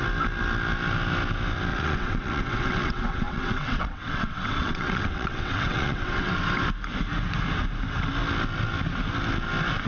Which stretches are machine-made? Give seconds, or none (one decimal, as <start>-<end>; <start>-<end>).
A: 1.7-6.3